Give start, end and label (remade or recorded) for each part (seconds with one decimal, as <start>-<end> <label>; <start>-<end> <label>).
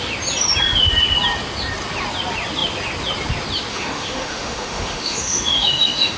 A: 0.0-3.7 recorded; 3.7-6.2 remade